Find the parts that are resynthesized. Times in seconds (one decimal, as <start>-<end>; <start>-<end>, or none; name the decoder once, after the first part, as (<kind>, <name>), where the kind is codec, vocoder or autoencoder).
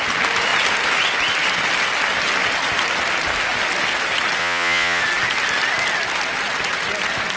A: 4.4-5.0 (vocoder, Vocos)